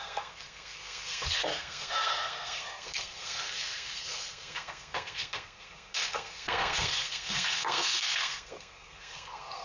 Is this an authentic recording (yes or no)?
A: no